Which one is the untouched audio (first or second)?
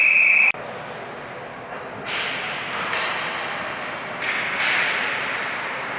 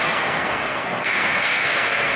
first